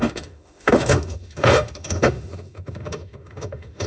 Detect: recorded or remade remade